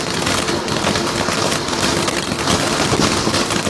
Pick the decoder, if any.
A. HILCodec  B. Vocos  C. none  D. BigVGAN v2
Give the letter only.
C